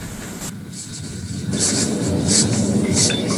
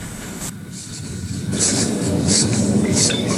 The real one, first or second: first